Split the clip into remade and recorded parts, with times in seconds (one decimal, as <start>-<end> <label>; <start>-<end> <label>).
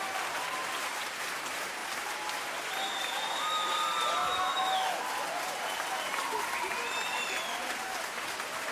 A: 0.0-4.2 recorded; 4.2-5.0 remade; 5.0-8.7 recorded